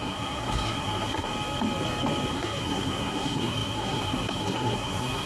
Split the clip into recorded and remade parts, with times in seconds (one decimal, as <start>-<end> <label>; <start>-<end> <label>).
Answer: 0.0-1.3 remade; 1.3-2.3 recorded; 2.3-5.3 remade